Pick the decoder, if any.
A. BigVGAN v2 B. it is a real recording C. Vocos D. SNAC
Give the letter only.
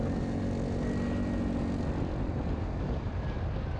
B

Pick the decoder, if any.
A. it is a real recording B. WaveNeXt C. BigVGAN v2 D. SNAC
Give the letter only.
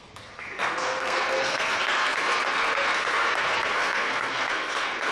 D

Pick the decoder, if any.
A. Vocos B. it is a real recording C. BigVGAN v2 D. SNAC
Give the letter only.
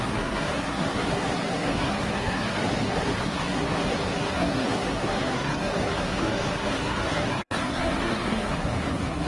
D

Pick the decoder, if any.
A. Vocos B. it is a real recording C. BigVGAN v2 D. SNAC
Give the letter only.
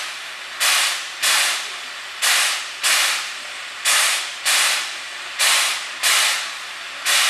B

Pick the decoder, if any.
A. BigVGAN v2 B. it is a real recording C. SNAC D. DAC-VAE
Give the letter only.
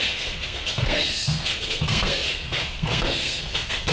C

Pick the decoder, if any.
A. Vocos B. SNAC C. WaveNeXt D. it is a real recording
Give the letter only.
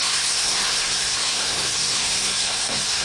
B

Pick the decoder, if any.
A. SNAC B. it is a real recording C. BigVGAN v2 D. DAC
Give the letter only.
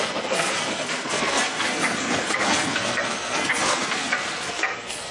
A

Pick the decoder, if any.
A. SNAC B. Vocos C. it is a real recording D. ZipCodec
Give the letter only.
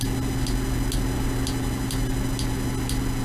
C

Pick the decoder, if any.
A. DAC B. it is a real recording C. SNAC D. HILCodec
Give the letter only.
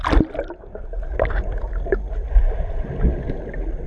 B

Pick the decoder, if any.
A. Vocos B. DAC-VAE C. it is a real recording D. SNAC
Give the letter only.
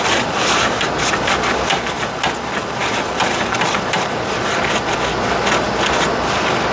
C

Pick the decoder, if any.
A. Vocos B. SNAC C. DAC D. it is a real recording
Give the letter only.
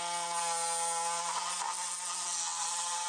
D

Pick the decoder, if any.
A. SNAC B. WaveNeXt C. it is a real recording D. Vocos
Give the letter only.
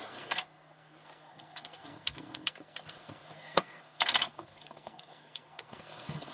A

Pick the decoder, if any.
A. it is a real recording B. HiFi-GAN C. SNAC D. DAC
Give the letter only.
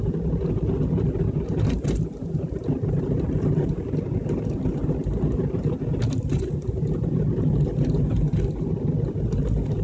A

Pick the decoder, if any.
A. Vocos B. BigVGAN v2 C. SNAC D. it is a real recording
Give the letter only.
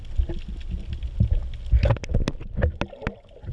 D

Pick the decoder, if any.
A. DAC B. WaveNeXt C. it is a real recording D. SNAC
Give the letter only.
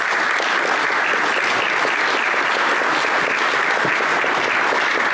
C